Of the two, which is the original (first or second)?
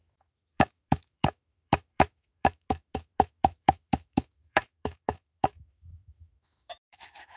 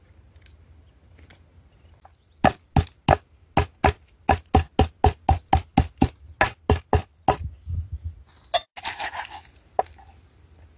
second